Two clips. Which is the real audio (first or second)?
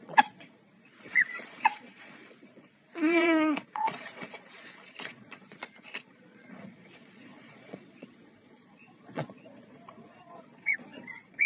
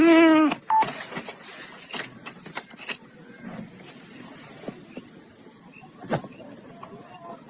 second